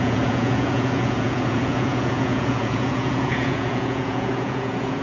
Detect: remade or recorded remade